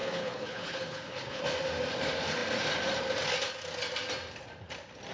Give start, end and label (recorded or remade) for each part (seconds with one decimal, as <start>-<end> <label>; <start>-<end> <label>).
0.0-1.4 remade; 1.4-5.1 recorded

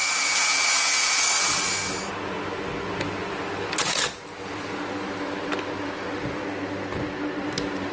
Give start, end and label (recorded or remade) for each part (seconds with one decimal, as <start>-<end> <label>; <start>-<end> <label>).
0.0-1.3 remade; 1.3-7.9 recorded

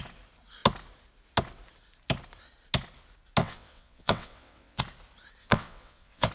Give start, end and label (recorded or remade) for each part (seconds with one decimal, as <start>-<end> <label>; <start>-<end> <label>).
0.0-3.4 recorded; 3.4-4.8 remade; 4.8-5.4 recorded; 5.4-6.3 remade

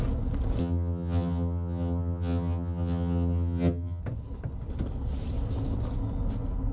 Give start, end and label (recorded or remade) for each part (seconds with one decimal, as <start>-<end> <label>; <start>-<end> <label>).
0.0-0.6 recorded; 0.6-4.0 remade; 4.0-6.7 recorded

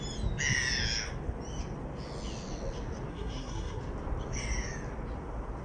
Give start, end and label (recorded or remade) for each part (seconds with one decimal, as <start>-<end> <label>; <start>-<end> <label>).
0.0-3.1 recorded; 3.1-3.8 remade; 3.8-5.6 recorded

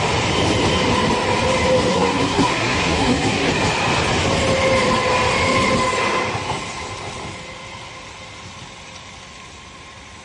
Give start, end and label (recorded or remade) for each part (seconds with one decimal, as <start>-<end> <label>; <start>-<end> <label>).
0.0-1.9 recorded; 1.9-3.5 remade; 3.5-10.2 recorded

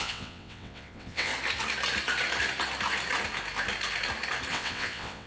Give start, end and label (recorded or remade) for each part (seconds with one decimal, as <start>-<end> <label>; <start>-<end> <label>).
0.0-1.3 remade; 1.3-4.5 recorded; 4.5-5.3 remade